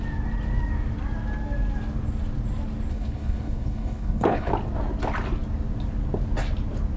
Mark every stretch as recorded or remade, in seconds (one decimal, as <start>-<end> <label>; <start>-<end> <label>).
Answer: 0.0-2.9 recorded; 2.9-4.5 remade; 4.5-7.0 recorded